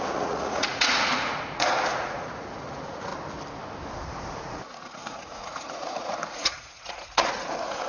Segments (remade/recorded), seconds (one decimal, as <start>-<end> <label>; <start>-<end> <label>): 0.0-3.1 remade; 3.1-4.3 recorded; 4.3-7.9 remade